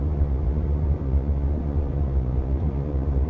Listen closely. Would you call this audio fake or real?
fake